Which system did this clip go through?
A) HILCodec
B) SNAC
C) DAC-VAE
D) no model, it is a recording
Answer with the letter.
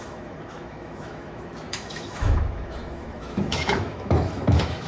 C